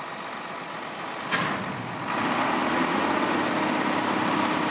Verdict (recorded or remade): recorded